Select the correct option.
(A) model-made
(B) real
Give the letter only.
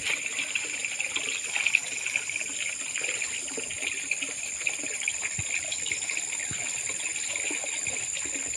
B